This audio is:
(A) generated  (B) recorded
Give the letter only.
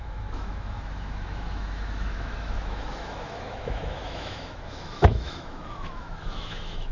A